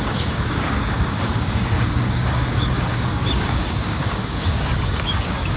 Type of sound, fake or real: fake